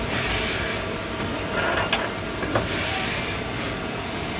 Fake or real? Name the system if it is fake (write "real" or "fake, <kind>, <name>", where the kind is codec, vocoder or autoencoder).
fake, vocoder, BigVGAN v2